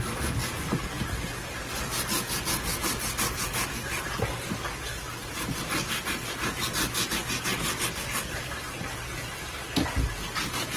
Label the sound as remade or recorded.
recorded